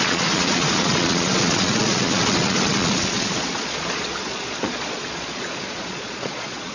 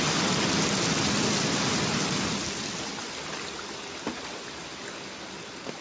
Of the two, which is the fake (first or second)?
first